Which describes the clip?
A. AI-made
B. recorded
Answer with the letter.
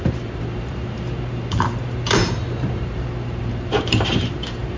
A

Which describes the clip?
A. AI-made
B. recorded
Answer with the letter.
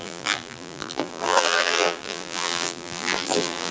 A